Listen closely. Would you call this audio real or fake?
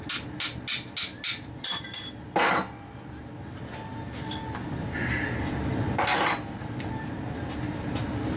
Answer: real